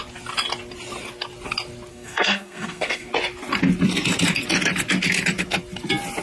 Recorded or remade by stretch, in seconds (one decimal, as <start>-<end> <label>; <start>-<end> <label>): 0.0-1.9 recorded; 1.9-3.1 remade; 3.1-6.2 recorded